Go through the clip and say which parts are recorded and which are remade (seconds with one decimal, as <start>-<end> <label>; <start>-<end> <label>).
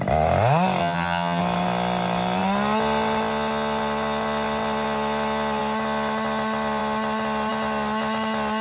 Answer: 0.0-0.8 recorded; 0.8-1.4 remade; 1.4-8.6 recorded